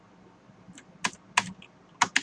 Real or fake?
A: real